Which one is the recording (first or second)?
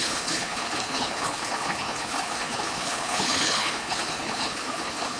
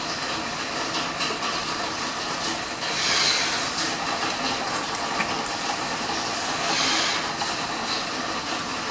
second